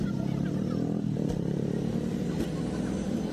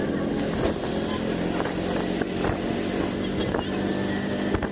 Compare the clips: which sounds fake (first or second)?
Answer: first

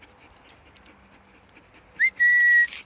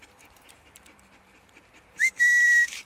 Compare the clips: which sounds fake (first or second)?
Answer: second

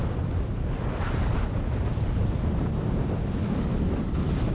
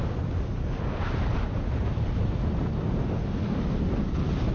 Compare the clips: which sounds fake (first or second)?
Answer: first